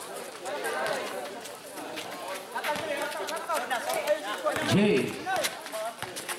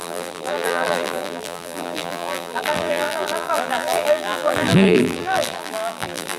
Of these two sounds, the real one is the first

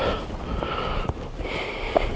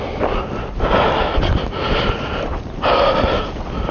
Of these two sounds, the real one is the second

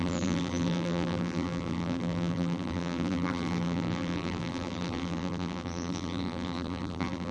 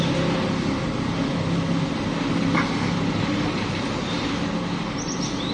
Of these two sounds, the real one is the second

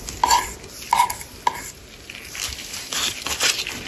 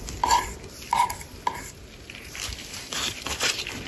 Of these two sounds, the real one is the first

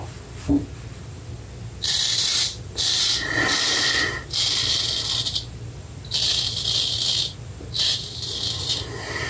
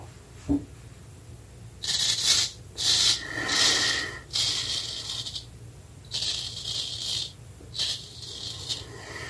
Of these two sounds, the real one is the second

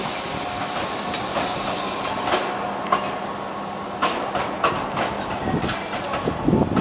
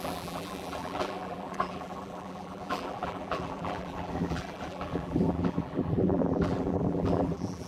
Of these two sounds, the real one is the first